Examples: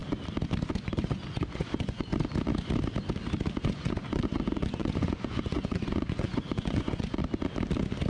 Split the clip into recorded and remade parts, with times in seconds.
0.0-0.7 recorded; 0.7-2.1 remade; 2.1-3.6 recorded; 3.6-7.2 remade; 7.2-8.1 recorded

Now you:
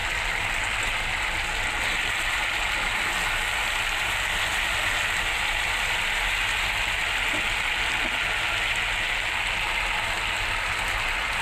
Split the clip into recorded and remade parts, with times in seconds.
0.0-11.4 recorded

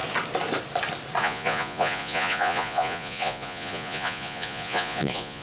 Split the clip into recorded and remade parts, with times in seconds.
0.0-1.2 recorded; 1.2-5.4 remade

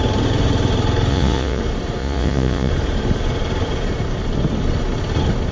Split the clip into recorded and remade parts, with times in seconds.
0.0-1.1 recorded; 1.1-1.6 remade; 1.6-2.0 recorded; 2.0-2.7 remade; 2.7-5.5 recorded

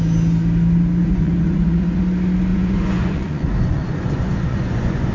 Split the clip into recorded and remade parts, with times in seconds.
0.0-1.0 recorded; 1.0-2.0 remade; 2.0-2.5 recorded; 2.5-5.1 remade